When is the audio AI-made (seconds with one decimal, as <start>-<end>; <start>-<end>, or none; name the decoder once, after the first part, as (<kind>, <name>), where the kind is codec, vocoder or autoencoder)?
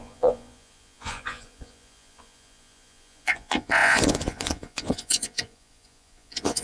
0.0-6.6 (vocoder, Vocos)